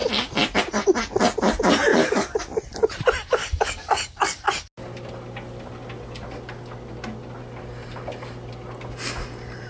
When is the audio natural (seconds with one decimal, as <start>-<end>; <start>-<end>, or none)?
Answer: 0.0-1.9; 2.4-3.4; 4.4-9.7